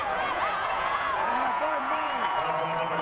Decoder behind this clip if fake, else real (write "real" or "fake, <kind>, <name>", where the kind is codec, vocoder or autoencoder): fake, vocoder, Vocos